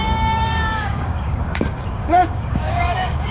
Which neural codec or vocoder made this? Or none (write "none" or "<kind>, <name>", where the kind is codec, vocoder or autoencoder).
codec, DAC